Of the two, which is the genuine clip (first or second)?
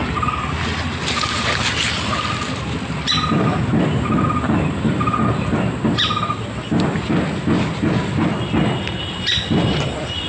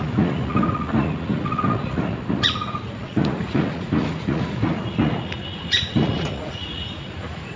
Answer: first